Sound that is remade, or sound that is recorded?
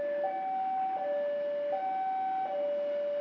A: recorded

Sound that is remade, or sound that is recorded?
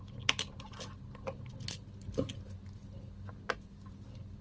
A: recorded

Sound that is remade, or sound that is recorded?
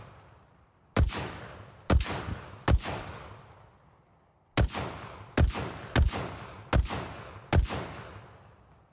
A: recorded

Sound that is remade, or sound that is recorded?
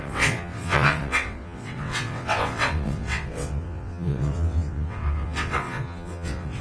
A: remade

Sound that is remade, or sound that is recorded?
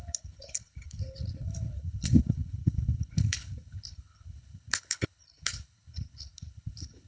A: remade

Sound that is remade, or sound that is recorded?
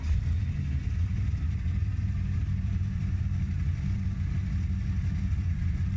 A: remade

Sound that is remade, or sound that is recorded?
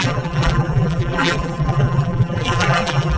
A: remade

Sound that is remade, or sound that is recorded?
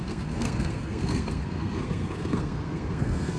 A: remade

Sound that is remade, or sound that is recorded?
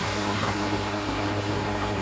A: remade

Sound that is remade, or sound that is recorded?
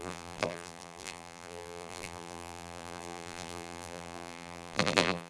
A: remade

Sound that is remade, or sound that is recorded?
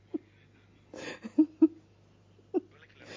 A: recorded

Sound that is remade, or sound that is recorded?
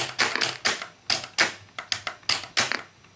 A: recorded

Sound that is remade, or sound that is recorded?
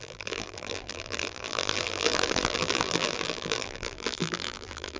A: remade